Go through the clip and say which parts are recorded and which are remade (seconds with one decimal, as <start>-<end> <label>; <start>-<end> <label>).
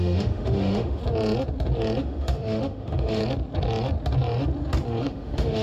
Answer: 0.0-1.0 remade; 1.0-2.0 recorded; 2.0-3.2 remade; 3.2-5.0 recorded; 5.0-5.6 remade